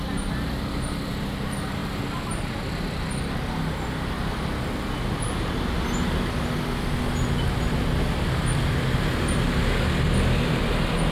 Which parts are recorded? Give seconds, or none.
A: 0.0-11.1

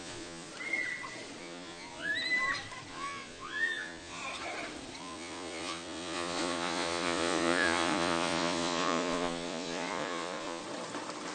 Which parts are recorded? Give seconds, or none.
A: 0.5-1.4; 2.1-2.9; 4.2-5.0; 10.6-11.3

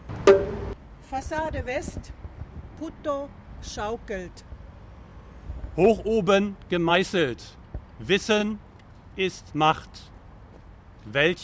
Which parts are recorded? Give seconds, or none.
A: 0.0-1.0; 2.0-11.4

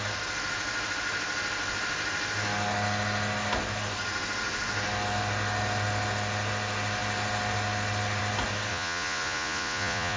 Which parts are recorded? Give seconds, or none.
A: 0.0-8.7

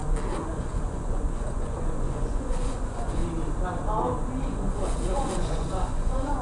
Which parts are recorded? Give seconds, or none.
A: 0.0-0.5; 3.2-4.5

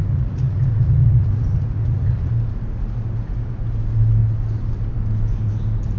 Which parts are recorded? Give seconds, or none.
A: 2.3-6.0

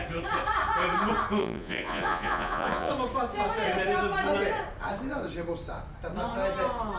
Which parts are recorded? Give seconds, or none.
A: 0.0-1.4; 2.9-7.0

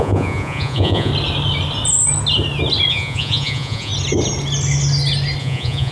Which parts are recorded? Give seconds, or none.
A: 1.1-2.9; 3.9-5.4